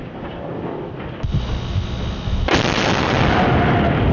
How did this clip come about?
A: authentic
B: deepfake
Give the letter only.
A